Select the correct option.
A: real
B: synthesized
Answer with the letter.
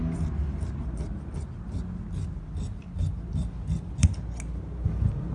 A